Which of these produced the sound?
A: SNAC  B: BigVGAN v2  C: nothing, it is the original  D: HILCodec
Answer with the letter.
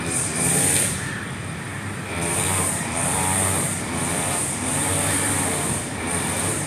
B